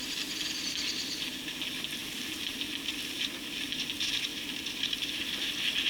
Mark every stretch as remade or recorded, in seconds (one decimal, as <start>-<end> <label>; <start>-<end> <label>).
0.0-2.0 recorded; 2.0-5.5 remade; 5.5-5.9 recorded